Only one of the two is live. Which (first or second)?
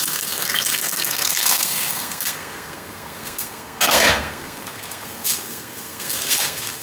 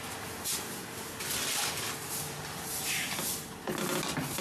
second